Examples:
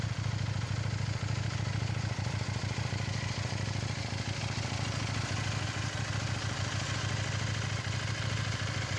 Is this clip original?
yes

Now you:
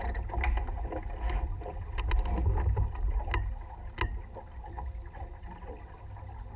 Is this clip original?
yes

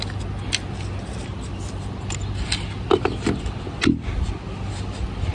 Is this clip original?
yes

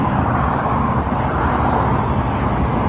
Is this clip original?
yes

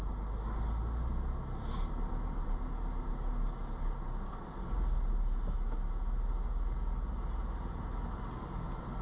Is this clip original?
yes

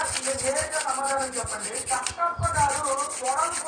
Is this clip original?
yes